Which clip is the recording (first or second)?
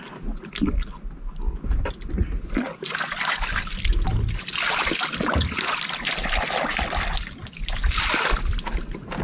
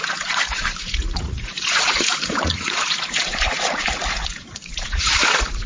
first